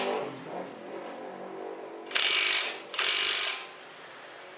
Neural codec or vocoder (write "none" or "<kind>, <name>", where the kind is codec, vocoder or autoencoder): none